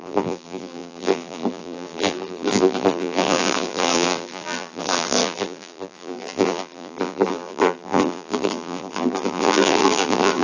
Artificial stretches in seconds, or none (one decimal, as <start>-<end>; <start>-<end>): 0.0-10.4